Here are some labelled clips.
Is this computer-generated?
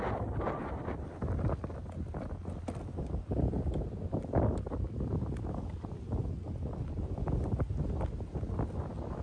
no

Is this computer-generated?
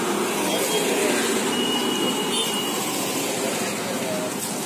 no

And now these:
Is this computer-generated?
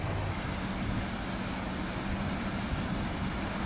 no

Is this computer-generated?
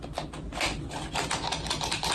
no